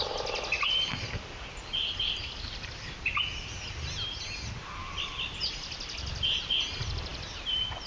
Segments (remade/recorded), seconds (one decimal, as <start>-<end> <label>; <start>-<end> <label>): 0.0-7.9 recorded